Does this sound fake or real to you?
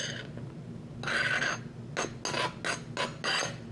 real